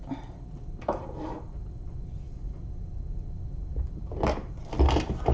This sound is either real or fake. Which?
real